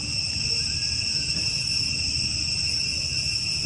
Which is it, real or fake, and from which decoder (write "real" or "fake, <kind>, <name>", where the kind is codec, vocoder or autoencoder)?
real